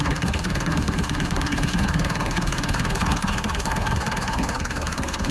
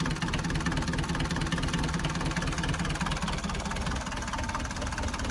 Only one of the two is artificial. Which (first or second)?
first